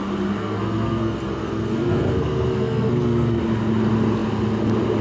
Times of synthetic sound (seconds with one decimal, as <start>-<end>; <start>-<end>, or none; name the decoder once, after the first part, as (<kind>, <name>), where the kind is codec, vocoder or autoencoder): 0.4-3.4 (codec, SNAC)